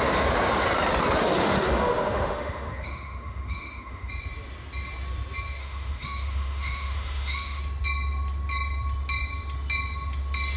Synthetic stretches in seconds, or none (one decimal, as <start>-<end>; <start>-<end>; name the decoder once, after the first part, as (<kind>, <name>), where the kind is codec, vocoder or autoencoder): 1.4-4.1 (autoencoder, DAC-VAE); 5.6-7.6